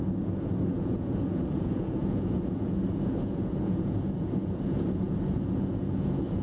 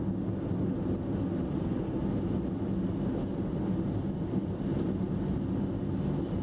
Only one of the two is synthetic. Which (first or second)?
first